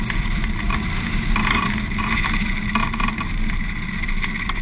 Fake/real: fake